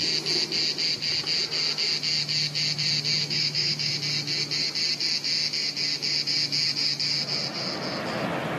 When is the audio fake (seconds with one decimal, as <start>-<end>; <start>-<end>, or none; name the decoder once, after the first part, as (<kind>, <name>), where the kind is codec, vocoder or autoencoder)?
3.2-3.9 (autoencoder, DAC-VAE)